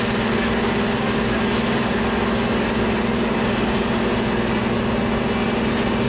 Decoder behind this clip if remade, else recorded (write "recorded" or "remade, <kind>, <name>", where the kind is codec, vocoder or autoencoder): recorded